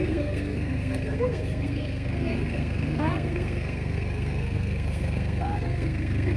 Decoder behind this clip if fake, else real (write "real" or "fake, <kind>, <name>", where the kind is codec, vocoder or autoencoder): fake, codec, SNAC